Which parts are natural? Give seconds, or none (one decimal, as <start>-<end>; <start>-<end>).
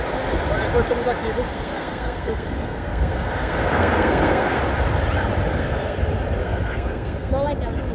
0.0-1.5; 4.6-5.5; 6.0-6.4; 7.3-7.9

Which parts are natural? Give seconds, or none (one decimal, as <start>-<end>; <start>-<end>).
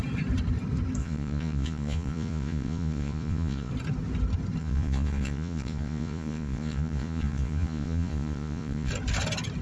0.0-1.0; 3.7-4.6; 8.9-9.6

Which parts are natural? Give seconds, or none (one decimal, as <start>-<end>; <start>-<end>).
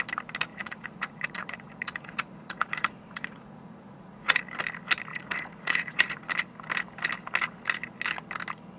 0.0-0.5; 4.4-5.1; 6.2-8.8